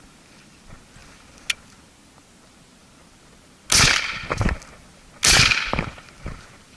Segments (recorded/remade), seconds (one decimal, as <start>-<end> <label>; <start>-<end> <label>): 0.0-6.8 recorded